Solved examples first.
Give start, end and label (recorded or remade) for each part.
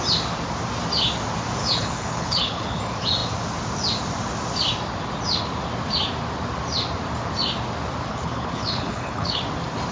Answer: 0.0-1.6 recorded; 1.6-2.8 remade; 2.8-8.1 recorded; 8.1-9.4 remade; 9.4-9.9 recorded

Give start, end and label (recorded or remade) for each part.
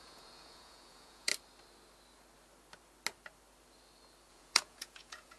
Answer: 0.0-1.3 remade; 1.3-4.3 recorded; 4.3-5.4 remade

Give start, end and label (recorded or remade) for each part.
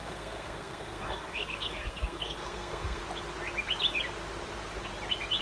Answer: 0.0-3.0 remade; 3.0-5.4 recorded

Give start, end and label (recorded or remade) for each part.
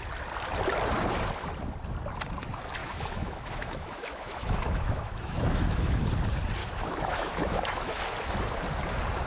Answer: 0.0-2.8 recorded; 2.8-6.0 remade; 6.0-6.6 recorded; 6.6-8.0 remade; 8.0-9.3 recorded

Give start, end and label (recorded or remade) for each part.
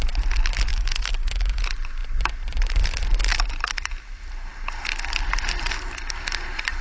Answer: 0.0-0.7 recorded; 0.7-1.6 remade; 1.6-6.8 recorded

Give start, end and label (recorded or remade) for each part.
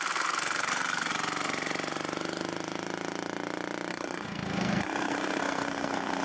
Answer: 0.0-1.1 remade; 1.1-3.9 recorded; 3.9-6.2 remade